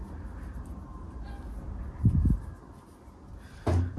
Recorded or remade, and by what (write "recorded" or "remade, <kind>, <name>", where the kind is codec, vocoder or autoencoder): recorded